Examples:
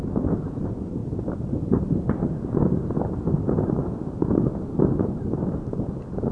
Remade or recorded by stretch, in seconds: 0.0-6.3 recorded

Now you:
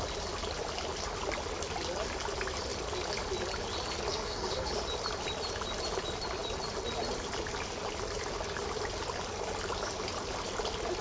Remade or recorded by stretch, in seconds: 0.0-4.1 recorded; 4.1-4.7 remade; 4.7-11.0 recorded